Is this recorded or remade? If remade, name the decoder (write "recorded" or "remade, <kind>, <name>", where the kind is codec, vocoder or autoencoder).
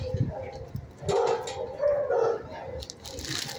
recorded